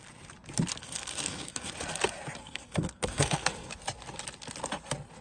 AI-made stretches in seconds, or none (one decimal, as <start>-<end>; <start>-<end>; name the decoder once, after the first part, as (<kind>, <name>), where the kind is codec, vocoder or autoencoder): 0.8-1.7 (codec, SNAC); 2.4-3.7